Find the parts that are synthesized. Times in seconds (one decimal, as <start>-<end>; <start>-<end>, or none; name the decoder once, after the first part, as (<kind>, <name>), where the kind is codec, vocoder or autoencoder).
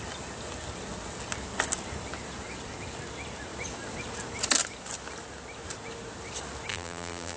6.7-7.4 (vocoder, BigVGAN v2)